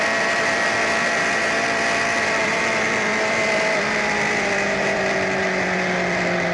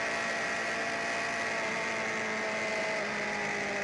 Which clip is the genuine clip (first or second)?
second